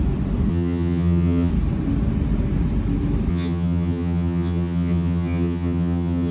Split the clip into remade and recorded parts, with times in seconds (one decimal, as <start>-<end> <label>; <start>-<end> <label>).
0.0-0.5 recorded; 0.5-1.5 remade; 1.5-3.3 recorded; 3.3-6.3 remade